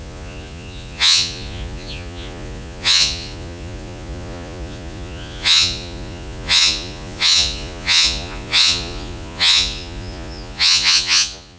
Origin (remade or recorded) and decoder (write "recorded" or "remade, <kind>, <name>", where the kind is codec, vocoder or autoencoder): remade, vocoder, Vocos